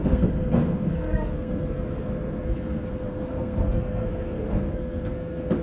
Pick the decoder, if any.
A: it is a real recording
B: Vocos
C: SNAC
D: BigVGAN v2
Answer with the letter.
C